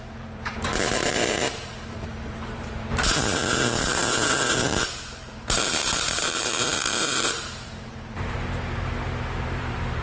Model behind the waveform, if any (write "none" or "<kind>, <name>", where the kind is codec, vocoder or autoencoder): vocoder, BigVGAN v2